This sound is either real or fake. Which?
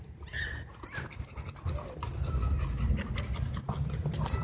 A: real